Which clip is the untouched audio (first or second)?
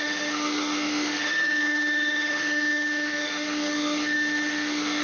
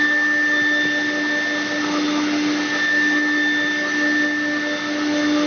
second